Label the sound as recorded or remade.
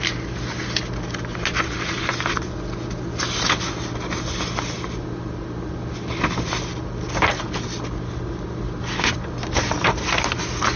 recorded